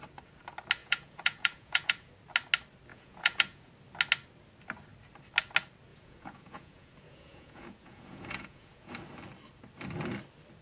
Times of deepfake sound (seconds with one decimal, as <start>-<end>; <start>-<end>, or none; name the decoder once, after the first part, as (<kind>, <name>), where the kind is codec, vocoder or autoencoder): 0.8-2.1 (vocoder, Vocos); 2.9-3.7; 5.9-8.9